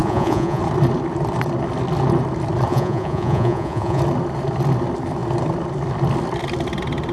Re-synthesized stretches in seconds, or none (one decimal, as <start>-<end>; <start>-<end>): 0.0-0.6; 2.7-4.0